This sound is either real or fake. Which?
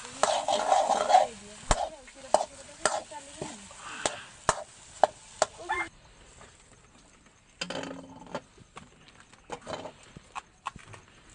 real